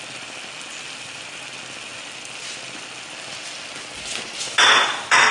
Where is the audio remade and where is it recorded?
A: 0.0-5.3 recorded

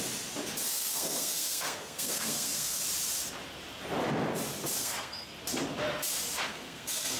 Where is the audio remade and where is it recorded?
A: 0.0-0.6 recorded; 0.6-2.8 remade; 2.8-4.8 recorded; 4.8-5.3 remade; 5.3-6.5 recorded; 6.5-7.2 remade

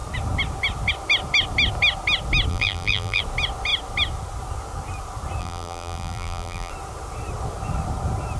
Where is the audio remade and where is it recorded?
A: 0.0-2.5 recorded; 2.5-3.2 remade; 3.2-5.4 recorded; 5.4-6.7 remade; 6.7-8.4 recorded

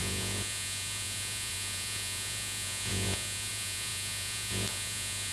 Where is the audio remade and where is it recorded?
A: 0.0-5.3 remade